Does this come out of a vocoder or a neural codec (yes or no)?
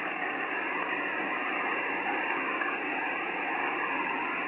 no